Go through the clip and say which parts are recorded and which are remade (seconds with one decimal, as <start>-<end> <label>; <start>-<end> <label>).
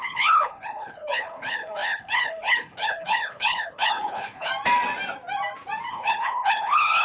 0.0-4.5 remade; 4.5-5.9 recorded; 5.9-7.0 remade